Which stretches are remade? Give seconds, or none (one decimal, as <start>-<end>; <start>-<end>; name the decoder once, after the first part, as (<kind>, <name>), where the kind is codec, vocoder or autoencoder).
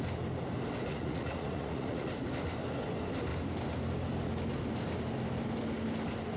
0.9-2.1 (vocoder, Vocos)